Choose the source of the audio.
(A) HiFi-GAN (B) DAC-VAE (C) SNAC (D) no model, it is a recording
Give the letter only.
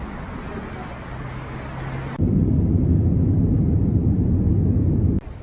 D